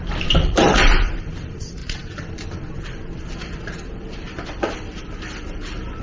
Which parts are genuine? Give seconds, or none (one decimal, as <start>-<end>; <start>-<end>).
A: 1.8-5.4